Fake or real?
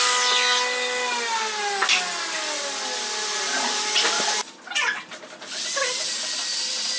real